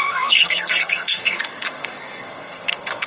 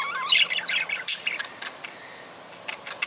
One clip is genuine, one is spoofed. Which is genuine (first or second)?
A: second